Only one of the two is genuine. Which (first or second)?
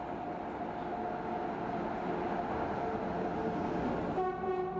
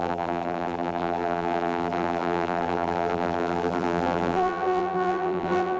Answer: first